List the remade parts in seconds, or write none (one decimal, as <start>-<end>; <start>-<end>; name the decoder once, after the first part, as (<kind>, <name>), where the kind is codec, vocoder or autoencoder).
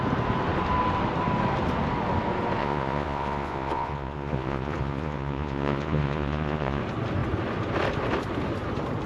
2.6-6.8 (vocoder, Vocos)